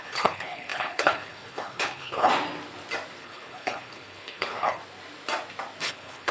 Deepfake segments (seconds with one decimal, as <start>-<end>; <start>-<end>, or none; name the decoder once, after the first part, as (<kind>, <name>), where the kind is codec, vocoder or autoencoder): 0.0-2.3 (codec, HILCodec); 3.2-4.8; 5.8-6.3